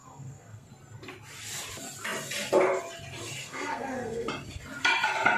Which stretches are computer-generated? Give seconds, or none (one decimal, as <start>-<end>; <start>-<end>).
0.0-0.7; 3.4-4.3